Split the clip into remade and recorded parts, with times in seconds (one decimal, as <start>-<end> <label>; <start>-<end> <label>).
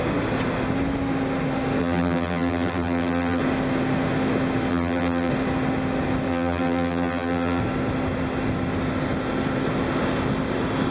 0.0-1.8 recorded; 1.8-3.4 remade; 3.4-4.7 recorded; 4.7-5.3 remade; 5.3-6.3 recorded; 6.3-7.6 remade; 7.6-10.9 recorded